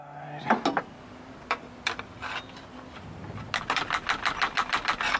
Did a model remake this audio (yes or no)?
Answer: no